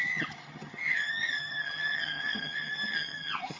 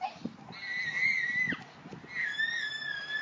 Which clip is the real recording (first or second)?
second